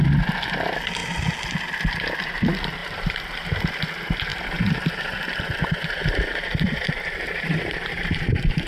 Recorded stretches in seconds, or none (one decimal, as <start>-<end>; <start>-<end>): 0.0-2.8; 3.6-4.3